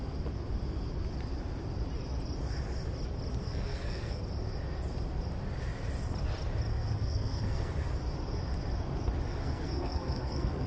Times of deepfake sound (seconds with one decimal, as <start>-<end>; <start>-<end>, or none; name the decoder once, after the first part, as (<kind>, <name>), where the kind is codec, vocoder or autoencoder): 3.4-4.2 (codec, SNAC); 6.7-7.7; 9.3-10.7